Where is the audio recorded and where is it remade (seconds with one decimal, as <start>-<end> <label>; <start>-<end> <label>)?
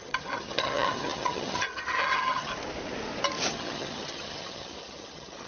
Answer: 0.0-2.5 remade; 2.5-3.5 recorded; 3.5-5.5 remade